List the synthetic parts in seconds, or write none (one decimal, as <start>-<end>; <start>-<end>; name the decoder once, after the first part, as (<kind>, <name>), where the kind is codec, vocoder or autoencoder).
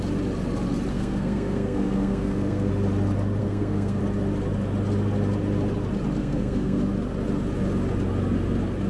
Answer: 0.9-2.7 (codec, SNAC); 3.4-4.0; 6.2-6.8